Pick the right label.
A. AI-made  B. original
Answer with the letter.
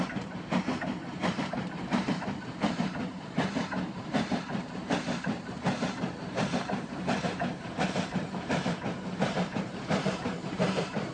A